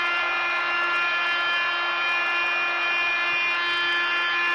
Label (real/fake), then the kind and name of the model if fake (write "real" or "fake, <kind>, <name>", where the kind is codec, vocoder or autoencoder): real